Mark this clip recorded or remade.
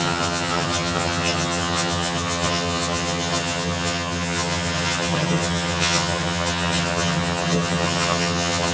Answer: remade